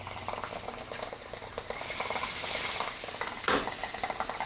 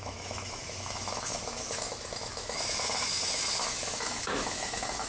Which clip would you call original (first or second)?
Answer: first